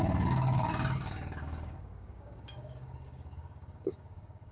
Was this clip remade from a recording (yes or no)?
yes